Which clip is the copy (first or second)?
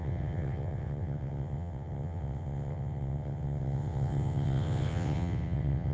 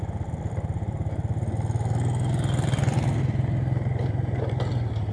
first